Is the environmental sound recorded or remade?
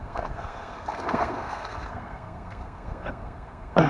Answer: remade